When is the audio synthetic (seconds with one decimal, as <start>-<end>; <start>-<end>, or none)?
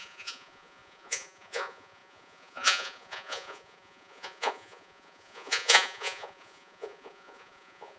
0.0-8.0